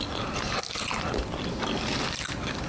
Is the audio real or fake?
real